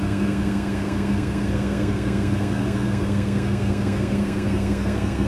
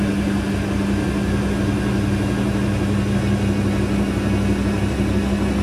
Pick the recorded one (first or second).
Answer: second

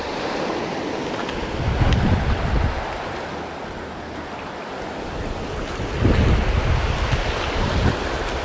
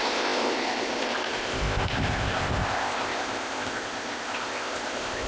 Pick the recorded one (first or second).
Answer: first